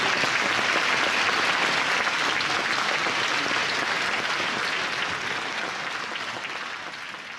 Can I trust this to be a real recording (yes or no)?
yes